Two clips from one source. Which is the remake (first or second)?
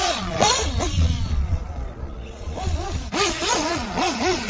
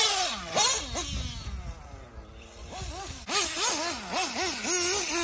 first